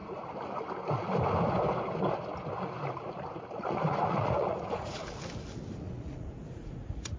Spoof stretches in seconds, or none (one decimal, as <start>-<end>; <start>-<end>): 3.6-5.0; 5.8-7.2